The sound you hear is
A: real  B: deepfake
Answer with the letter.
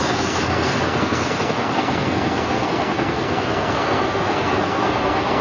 B